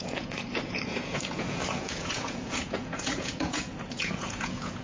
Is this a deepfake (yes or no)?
yes